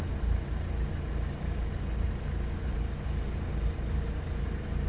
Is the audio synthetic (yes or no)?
no